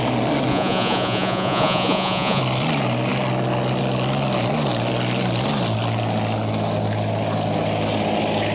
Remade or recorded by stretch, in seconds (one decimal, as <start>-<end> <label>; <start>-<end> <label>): 0.0-0.5 recorded; 0.5-2.4 remade; 2.4-8.5 recorded